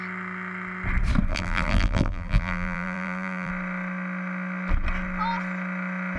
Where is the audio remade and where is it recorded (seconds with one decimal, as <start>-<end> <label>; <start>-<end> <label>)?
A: 0.0-1.3 recorded; 1.3-3.5 remade; 3.5-6.2 recorded